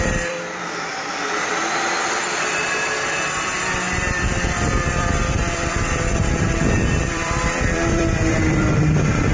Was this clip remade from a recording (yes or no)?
yes